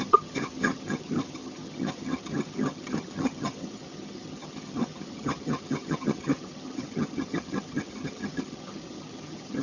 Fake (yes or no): yes